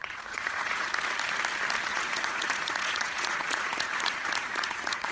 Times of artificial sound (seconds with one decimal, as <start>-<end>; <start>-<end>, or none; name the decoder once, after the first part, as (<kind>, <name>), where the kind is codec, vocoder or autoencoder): 0.0-0.9 (vocoder, Vocos); 1.9-5.1